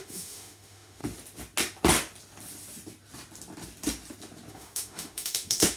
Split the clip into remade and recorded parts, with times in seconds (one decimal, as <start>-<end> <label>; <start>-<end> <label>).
0.0-1.0 remade; 1.0-4.5 recorded; 4.5-5.8 remade